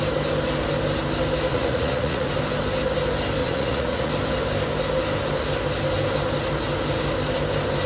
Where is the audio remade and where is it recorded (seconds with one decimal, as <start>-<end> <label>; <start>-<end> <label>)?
0.0-1.5 recorded; 1.5-2.3 remade; 2.3-3.4 recorded; 3.4-4.1 remade; 4.1-7.9 recorded